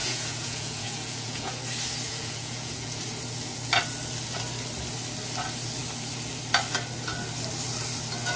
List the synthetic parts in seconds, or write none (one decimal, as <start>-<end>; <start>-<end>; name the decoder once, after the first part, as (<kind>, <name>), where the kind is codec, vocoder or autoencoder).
0.0-1.6 (vocoder, Vocos); 2.1-3.0